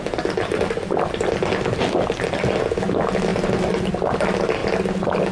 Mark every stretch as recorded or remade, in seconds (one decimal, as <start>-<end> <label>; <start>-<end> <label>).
0.0-5.3 recorded